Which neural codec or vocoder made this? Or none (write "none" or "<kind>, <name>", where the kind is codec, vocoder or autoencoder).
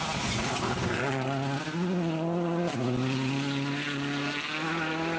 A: none